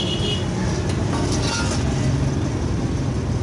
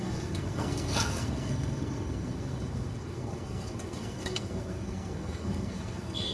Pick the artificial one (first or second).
second